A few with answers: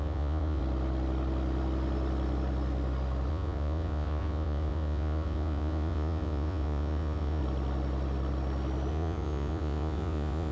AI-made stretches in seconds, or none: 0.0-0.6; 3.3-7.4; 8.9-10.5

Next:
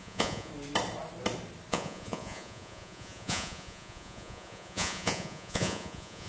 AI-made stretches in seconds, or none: 0.0-0.5; 1.7-6.3

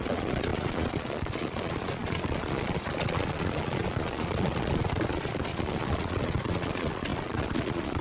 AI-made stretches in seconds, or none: 0.0-8.0